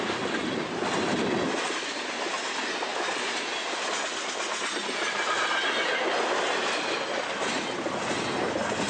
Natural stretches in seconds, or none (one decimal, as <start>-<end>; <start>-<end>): 0.0-8.9